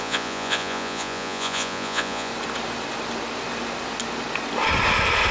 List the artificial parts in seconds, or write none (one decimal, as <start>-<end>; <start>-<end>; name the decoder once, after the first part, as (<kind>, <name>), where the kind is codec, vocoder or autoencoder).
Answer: 0.0-2.3 (vocoder, Vocos)